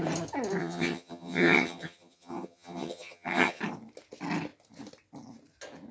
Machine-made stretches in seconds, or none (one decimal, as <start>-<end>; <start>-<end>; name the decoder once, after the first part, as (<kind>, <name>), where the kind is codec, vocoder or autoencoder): 0.6-3.6 (vocoder, HiFi-GAN)